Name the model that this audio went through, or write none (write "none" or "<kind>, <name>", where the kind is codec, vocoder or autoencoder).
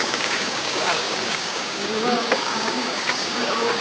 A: codec, DAC